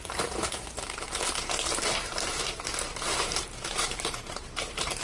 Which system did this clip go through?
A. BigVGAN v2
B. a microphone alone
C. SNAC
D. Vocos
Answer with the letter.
A